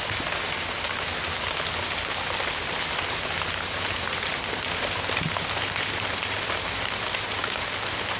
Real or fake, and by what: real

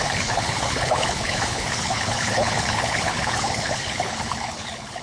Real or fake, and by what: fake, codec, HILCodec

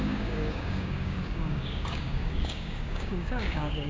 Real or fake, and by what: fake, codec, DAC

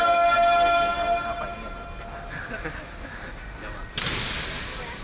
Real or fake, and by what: real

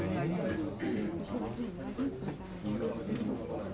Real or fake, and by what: real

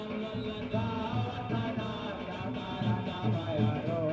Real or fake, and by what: real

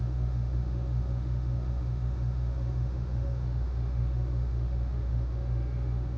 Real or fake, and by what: fake, autoencoder, DAC-VAE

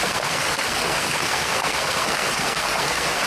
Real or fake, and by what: fake, codec, SNAC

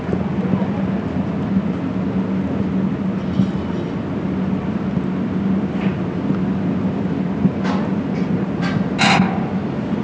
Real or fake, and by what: real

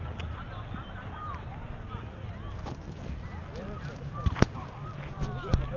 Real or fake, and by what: fake, vocoder, BigVGAN v2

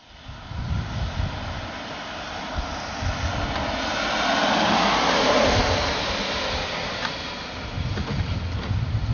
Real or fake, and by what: real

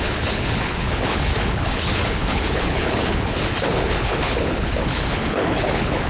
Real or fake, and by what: fake, codec, HILCodec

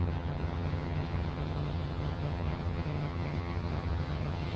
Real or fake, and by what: fake, vocoder, HiFi-GAN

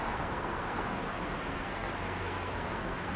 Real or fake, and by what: fake, codec, SNAC